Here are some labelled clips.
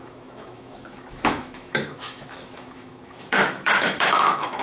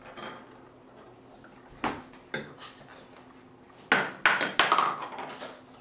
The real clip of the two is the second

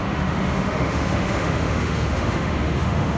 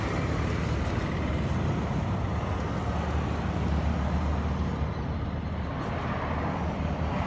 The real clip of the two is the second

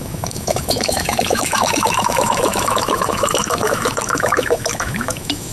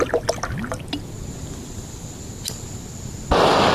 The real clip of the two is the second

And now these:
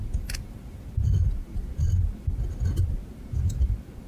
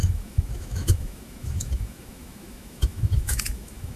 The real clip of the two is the first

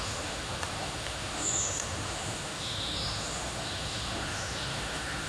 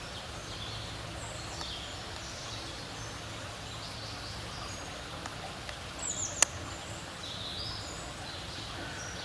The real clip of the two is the second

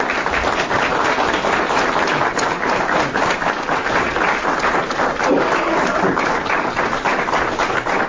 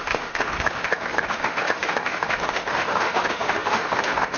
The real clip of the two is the first